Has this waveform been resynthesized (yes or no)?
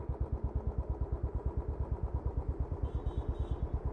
yes